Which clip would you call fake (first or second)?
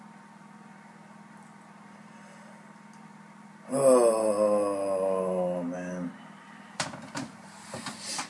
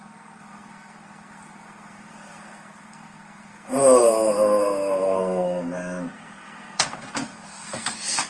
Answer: second